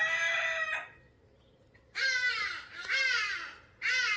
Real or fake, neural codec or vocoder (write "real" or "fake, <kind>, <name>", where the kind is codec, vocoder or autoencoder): real